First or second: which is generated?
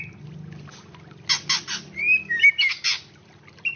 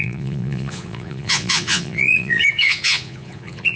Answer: second